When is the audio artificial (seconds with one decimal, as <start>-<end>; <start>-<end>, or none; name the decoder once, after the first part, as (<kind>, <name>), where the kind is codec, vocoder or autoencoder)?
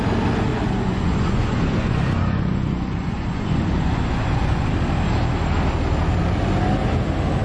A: 0.5-4.7 (vocoder, Vocos)